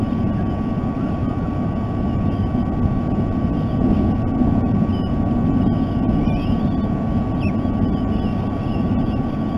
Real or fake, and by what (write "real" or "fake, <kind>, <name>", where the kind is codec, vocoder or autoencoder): fake, vocoder, BigVGAN v2